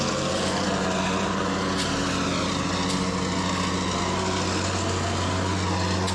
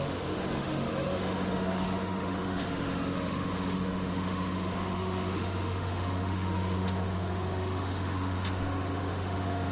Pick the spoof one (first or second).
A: second